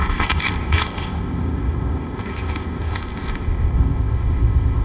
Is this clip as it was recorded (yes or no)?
no